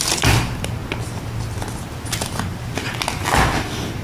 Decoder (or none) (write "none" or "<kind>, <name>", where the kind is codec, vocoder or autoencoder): none